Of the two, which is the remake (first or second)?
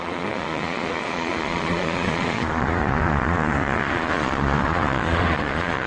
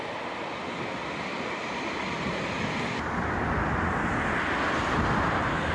first